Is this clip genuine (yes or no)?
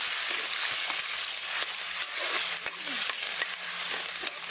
no